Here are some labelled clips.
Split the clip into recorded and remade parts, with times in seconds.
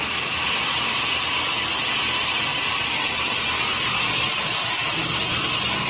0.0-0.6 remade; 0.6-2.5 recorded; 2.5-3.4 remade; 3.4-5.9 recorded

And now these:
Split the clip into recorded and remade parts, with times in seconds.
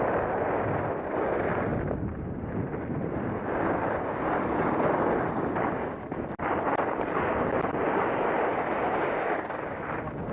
0.0-1.7 recorded; 1.7-6.4 remade; 6.4-10.3 recorded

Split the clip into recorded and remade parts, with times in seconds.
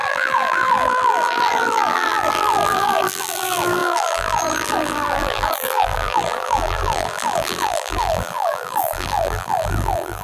0.0-10.2 remade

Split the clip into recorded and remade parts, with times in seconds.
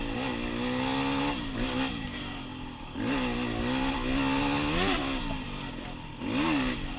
0.0-7.0 recorded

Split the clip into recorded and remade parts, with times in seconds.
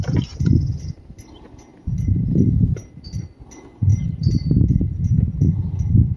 0.0-1.7 recorded; 1.7-3.1 remade; 3.1-3.9 recorded; 3.9-4.8 remade; 4.8-6.2 recorded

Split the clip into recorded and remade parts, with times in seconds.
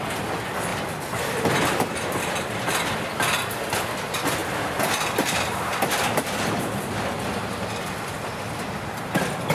0.0-9.5 recorded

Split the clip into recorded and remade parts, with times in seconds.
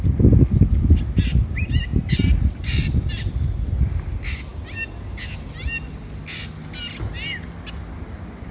0.0-1.9 recorded; 1.9-3.1 remade; 3.1-8.5 recorded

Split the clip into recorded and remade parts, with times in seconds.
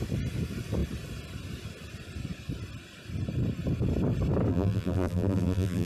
0.0-4.5 recorded; 4.5-5.9 remade